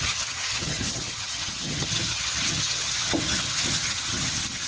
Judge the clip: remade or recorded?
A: remade